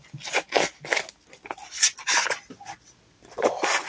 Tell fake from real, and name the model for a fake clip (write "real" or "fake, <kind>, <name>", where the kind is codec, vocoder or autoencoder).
real